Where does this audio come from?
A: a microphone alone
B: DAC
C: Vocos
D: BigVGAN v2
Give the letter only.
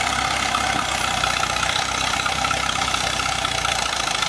D